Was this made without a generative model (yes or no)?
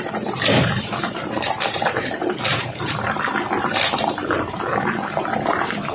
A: no